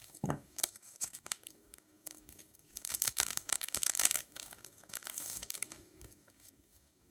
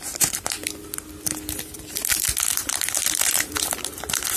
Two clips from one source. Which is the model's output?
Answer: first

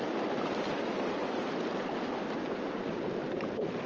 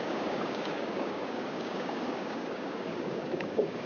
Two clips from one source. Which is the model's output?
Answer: second